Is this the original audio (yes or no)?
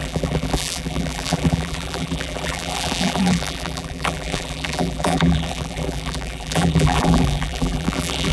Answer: no